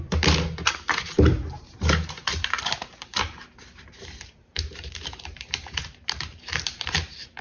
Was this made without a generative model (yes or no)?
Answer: no